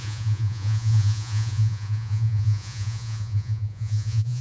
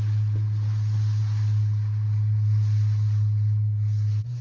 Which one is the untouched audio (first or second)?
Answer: second